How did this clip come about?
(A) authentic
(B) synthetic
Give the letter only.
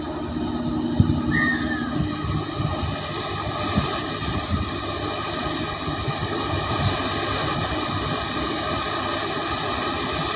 A